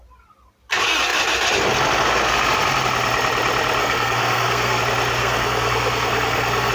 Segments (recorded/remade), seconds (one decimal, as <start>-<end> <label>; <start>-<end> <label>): 0.0-3.8 recorded; 3.8-4.8 remade; 4.8-5.2 recorded; 5.2-6.7 remade